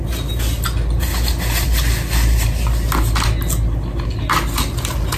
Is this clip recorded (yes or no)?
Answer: yes